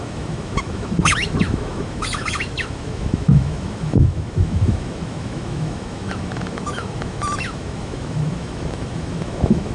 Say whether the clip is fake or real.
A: fake